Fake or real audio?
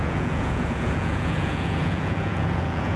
fake